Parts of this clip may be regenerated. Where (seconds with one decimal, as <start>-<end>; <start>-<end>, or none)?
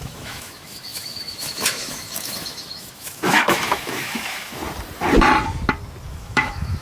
0.0-4.6; 6.1-6.8